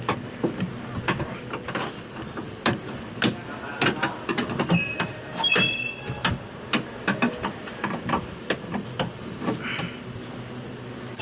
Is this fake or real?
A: real